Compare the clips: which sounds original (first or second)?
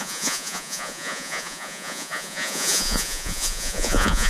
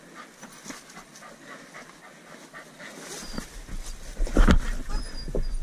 second